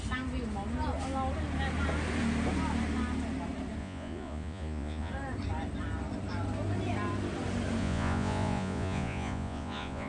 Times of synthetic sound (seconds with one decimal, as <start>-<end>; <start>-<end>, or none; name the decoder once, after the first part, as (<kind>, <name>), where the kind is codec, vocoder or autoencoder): 3.8-5.1 (vocoder, Vocos); 7.8-10.1